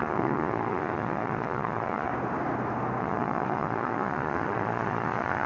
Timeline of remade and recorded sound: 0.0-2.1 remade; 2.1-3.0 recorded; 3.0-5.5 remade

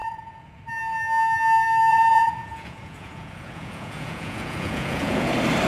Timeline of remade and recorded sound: 0.0-0.6 remade; 0.6-1.9 recorded; 1.9-5.3 remade; 5.3-5.7 recorded